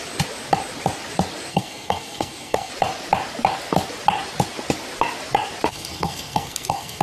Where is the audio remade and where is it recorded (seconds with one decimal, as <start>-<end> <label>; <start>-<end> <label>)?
0.0-1.5 recorded; 1.5-2.7 remade; 2.7-5.7 recorded; 5.7-7.0 remade